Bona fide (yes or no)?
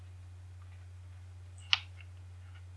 yes